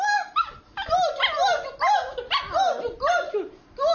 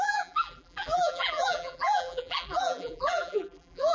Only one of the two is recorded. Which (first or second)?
first